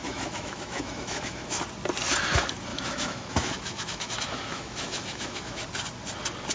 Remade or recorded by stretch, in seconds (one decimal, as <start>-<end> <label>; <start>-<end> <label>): 0.0-1.6 remade; 1.6-2.7 recorded; 2.7-5.6 remade; 5.6-6.5 recorded